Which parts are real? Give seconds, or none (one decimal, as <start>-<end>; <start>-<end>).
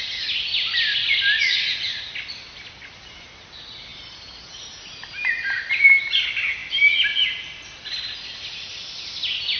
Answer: 0.0-9.6